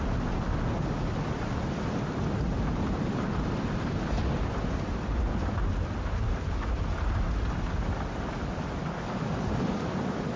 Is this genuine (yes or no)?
yes